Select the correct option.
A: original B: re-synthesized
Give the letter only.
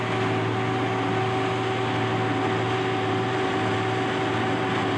A